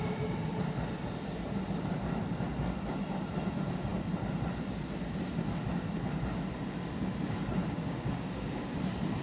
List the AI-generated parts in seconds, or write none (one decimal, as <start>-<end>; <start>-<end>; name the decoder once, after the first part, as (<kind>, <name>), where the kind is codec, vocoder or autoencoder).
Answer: 7.6-8.7 (codec, DAC)